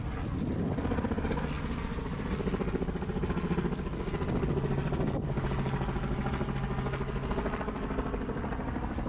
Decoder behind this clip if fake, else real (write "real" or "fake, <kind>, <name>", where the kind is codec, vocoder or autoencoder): real